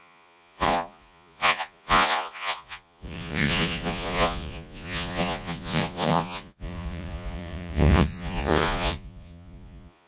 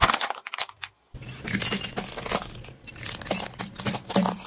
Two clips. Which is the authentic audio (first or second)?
second